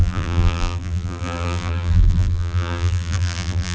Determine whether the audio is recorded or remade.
remade